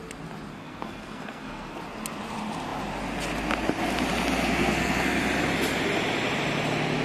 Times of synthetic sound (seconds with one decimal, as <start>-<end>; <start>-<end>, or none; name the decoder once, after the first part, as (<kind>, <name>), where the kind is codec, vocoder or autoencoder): 0.5-1.8 (codec, SNAC); 4.5-5.2